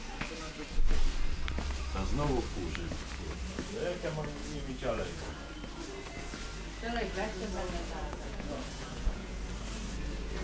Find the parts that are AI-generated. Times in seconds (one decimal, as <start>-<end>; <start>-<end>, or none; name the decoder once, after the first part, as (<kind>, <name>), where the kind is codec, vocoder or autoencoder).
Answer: 4.4-5.3 (vocoder, Vocos); 8.0-9.4